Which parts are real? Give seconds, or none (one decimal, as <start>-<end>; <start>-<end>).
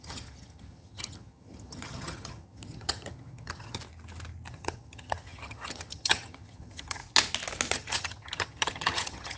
3.8-4.5; 7.0-7.7